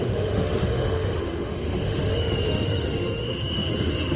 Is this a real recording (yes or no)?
no